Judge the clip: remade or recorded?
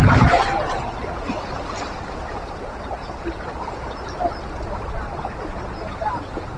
recorded